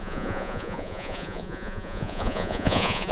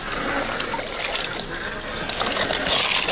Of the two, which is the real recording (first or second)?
second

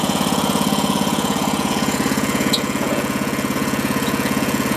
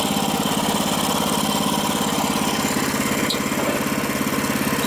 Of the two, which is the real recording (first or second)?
second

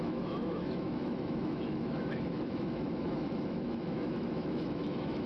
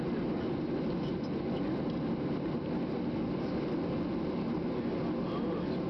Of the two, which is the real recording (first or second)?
second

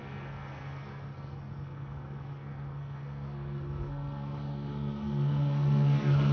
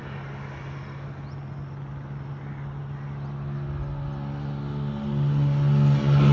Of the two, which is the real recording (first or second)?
second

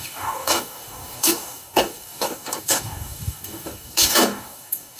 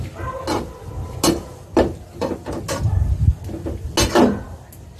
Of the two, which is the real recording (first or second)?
second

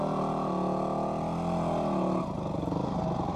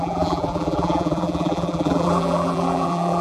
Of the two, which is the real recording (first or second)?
first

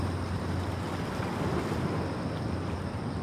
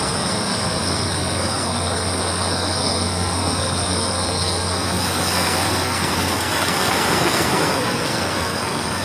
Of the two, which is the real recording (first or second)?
first